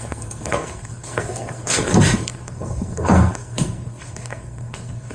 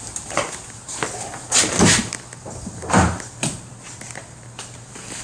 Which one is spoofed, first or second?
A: first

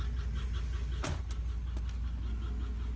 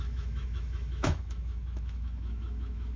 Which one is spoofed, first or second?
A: second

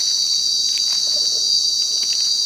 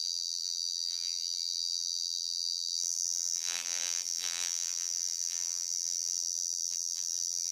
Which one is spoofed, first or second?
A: second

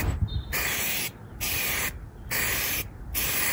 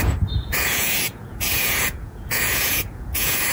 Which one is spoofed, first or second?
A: second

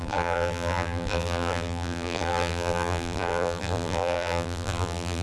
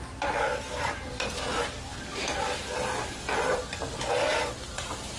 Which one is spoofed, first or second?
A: first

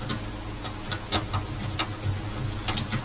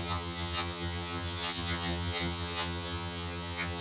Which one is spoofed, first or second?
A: second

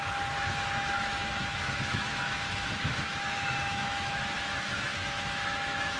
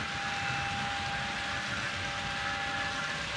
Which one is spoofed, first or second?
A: first